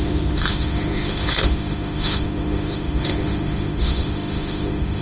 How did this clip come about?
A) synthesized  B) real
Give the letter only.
A